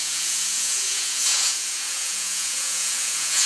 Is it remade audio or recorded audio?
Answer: remade